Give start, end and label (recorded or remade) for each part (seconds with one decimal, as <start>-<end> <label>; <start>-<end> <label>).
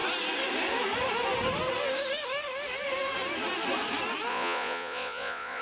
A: 0.0-4.3 recorded; 4.3-5.6 remade